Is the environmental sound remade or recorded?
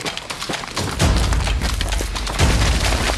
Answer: recorded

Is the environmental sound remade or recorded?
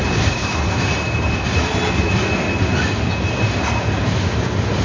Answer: recorded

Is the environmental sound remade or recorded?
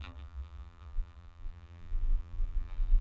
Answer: remade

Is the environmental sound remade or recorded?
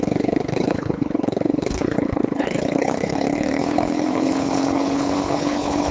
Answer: remade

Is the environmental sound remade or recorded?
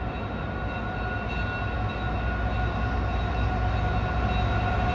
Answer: recorded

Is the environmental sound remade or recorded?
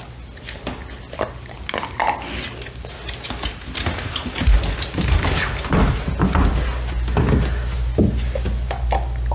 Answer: recorded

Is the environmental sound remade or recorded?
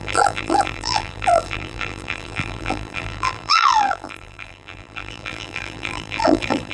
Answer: remade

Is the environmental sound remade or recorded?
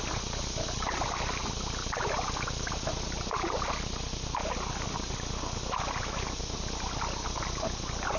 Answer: recorded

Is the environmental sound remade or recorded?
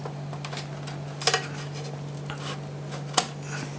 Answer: recorded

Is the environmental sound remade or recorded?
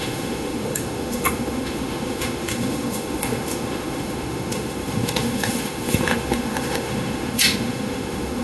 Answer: remade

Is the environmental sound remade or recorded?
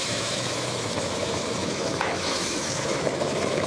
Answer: remade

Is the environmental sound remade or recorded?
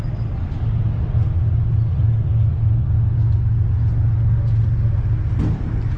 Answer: recorded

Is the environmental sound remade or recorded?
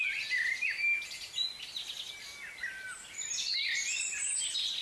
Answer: recorded